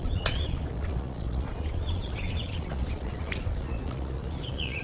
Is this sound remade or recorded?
remade